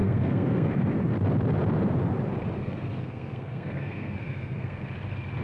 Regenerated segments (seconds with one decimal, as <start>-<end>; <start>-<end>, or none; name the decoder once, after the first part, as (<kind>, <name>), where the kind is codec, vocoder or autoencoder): 0.0-0.9 (codec, SNAC); 2.6-4.8